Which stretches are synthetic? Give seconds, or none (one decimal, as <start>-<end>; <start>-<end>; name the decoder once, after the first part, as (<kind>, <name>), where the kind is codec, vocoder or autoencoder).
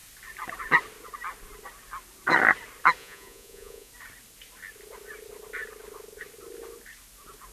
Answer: 3.0-3.9 (vocoder, Vocos)